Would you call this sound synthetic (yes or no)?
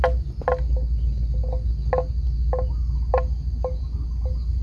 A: no